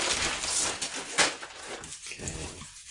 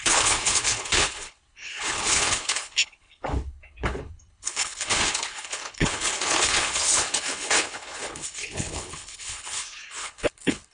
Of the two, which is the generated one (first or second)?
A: second